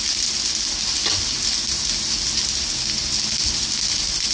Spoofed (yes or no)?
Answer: no